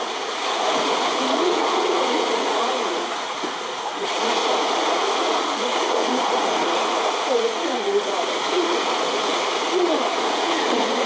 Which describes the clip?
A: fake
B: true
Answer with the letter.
A